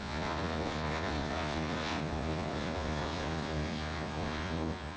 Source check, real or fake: fake